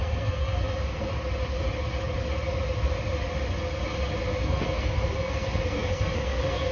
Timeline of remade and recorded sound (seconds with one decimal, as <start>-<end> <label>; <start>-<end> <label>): 0.0-1.1 remade; 1.1-4.4 recorded; 4.4-6.7 remade